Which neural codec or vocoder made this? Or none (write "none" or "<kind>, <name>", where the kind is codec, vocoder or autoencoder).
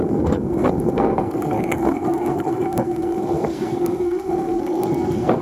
codec, SNAC